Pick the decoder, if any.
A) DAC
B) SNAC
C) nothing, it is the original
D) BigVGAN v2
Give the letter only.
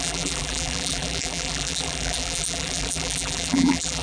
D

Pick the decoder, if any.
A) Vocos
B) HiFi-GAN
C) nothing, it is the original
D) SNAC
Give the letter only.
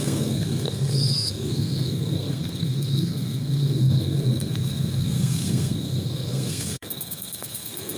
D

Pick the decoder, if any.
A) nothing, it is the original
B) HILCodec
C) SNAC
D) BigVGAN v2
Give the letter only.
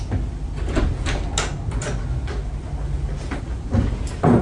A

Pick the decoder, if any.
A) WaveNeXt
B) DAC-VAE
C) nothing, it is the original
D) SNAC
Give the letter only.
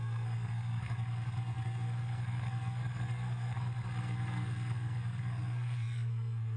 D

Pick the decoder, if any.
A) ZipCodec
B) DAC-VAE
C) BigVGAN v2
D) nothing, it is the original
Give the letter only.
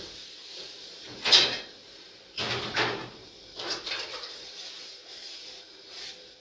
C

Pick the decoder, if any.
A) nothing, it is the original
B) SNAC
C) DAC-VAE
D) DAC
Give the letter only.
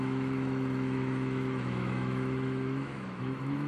C